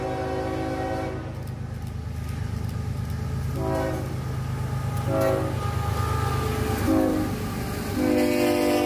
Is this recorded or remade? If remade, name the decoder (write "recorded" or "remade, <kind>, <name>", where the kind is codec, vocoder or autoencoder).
recorded